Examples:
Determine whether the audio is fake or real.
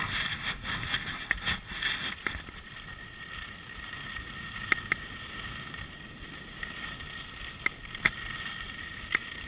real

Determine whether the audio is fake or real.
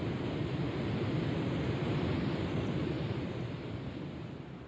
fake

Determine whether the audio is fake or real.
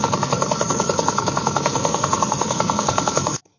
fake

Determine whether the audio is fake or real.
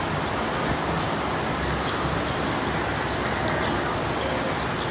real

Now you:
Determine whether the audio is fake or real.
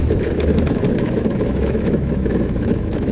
fake